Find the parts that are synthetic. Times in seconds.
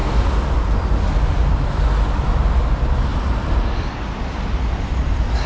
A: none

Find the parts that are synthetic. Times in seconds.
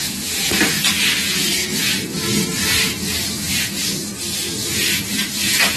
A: 0.0-0.6 (vocoder, Vocos)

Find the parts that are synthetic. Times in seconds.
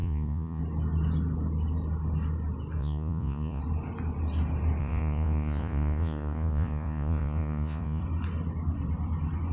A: 0.0-0.6 (vocoder, Vocos); 2.8-3.6; 4.8-8.0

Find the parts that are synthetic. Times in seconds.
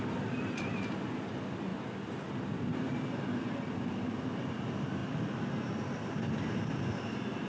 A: none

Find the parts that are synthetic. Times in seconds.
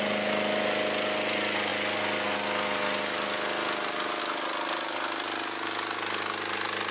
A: none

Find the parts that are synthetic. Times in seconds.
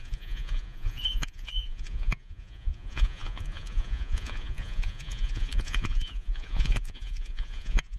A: 0.0-8.0 (vocoder, Vocos)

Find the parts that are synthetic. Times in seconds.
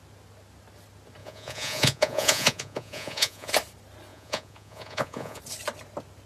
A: 1.2-3.5 (vocoder, Vocos); 4.1-5.4